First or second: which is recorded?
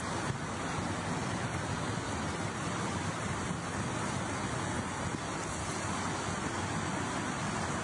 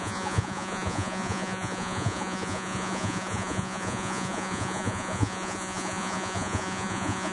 first